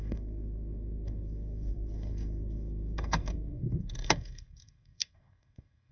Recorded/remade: remade